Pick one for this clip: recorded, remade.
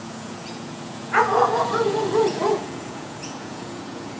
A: remade